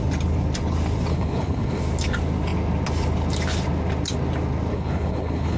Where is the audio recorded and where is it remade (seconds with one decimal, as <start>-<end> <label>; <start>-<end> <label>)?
0.0-1.1 recorded; 1.1-1.8 remade; 1.8-4.7 recorded; 4.7-5.6 remade